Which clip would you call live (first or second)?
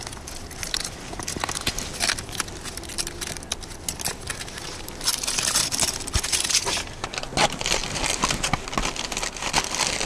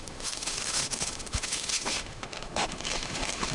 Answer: first